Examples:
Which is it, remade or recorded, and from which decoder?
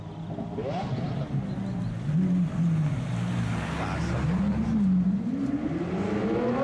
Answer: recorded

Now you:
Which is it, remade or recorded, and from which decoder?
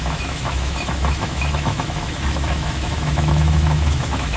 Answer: remade, autoencoder, DAC-VAE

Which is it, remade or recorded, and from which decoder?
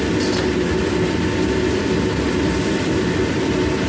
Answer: recorded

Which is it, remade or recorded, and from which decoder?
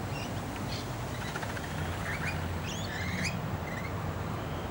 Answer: recorded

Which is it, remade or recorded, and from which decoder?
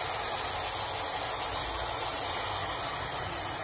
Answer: recorded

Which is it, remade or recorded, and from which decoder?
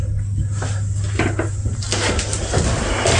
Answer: recorded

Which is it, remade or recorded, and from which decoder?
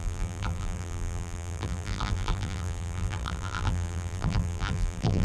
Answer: remade, vocoder, BigVGAN v2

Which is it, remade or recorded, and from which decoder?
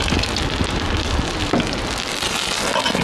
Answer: recorded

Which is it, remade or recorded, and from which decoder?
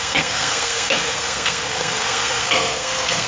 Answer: remade, codec, SNAC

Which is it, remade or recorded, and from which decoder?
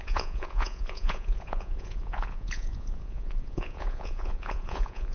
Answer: remade, vocoder, Vocos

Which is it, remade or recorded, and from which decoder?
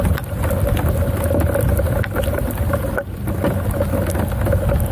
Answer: recorded